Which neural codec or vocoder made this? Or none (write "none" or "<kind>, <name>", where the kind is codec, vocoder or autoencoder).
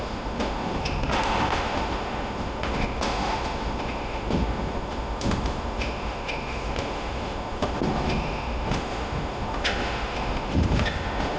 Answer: autoencoder, DAC-VAE